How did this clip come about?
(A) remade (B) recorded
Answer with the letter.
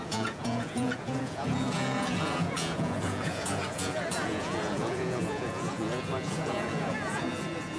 A